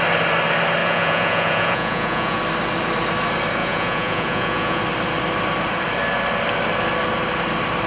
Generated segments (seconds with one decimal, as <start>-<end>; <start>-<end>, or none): 0.8-2.4; 3.6-4.8